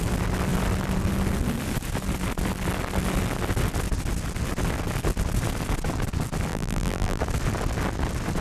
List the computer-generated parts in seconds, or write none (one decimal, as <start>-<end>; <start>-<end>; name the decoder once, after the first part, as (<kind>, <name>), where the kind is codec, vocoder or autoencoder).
6.5-7.2 (vocoder, BigVGAN v2)